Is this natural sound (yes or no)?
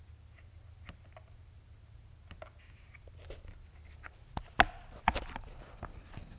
yes